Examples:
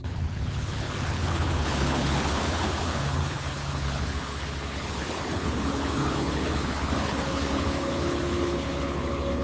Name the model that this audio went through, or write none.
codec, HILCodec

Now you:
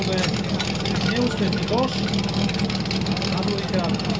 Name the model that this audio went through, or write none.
none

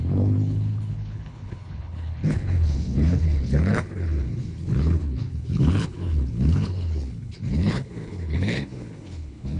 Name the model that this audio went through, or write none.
codec, HILCodec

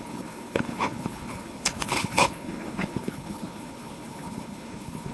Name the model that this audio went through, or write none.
codec, HILCodec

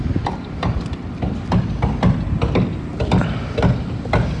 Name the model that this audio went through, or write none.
none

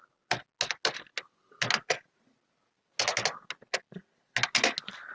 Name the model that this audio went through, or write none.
none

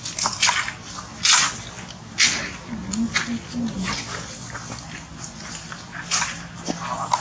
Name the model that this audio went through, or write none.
none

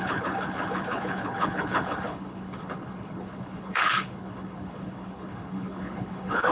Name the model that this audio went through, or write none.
codec, HILCodec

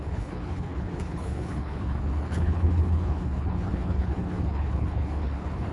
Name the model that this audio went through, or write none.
codec, HILCodec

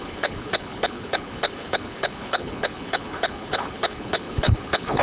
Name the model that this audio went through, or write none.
codec, HILCodec